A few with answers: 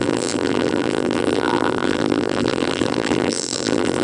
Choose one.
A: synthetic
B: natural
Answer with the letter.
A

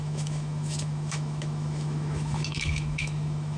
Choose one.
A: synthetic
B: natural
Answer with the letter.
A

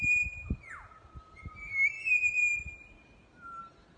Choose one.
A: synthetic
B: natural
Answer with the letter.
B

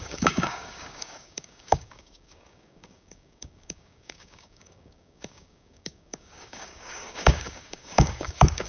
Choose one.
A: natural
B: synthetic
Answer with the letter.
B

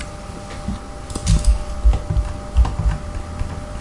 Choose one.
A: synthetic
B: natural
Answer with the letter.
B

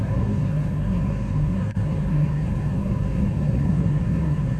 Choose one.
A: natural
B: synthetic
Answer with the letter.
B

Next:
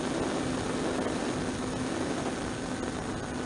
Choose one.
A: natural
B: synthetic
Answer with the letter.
A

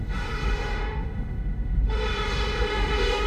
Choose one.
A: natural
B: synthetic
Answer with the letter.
B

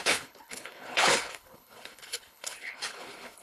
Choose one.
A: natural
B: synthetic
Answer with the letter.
B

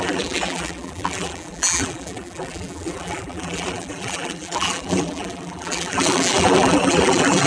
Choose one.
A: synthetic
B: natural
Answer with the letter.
A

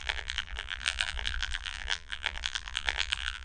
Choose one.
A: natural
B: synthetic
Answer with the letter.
B